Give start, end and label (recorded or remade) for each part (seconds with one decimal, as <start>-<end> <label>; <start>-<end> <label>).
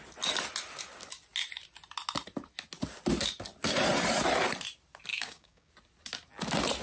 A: 0.0-5.1 recorded; 5.1-5.7 remade; 5.7-6.8 recorded